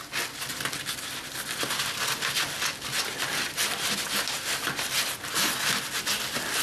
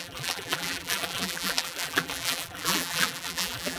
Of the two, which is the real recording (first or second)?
first